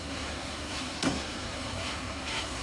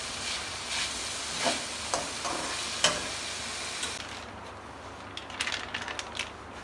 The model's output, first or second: first